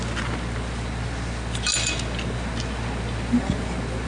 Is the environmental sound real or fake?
real